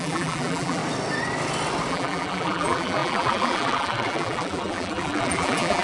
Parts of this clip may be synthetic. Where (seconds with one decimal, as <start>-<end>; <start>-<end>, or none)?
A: 0.0-0.8; 1.9-5.8